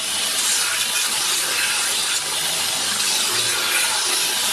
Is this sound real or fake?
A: real